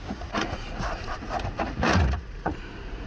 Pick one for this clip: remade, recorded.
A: remade